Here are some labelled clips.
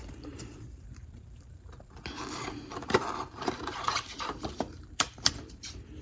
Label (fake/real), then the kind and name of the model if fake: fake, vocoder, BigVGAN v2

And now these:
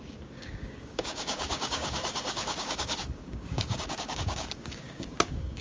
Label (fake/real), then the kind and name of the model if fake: fake, codec, DAC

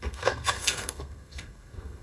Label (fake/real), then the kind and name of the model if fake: fake, codec, SNAC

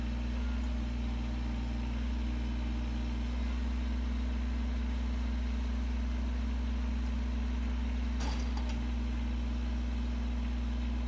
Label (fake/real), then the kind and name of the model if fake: real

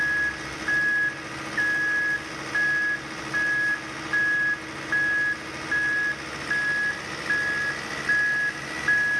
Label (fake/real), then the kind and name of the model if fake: real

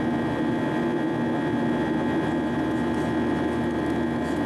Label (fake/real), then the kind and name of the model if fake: real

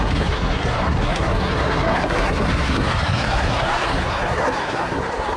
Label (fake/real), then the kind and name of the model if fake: fake, codec, SNAC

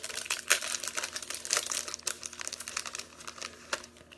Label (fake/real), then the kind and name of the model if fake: real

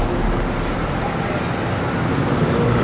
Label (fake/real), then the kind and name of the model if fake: real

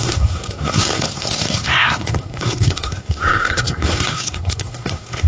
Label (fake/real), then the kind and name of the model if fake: fake, codec, SNAC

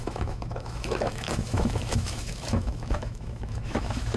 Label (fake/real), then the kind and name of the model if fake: fake, autoencoder, DAC-VAE